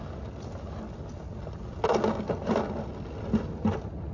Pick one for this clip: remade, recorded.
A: recorded